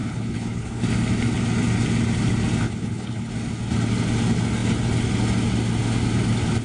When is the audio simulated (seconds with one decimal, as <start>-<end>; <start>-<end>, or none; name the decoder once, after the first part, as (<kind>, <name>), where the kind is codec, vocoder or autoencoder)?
0.0-0.8 (codec, HILCodec); 2.6-3.3